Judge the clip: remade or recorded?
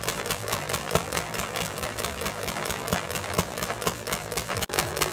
remade